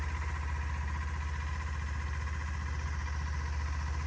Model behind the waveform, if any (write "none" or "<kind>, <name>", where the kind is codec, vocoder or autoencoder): none